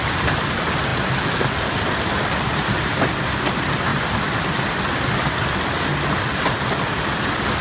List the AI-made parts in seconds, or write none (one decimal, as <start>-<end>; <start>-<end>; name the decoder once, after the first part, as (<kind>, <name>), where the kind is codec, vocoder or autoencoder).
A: none